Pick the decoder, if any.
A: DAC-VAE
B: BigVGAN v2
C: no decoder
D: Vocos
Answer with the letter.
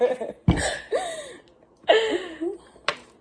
B